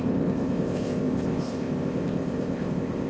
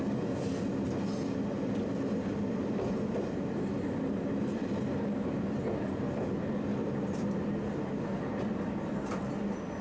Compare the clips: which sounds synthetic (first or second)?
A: first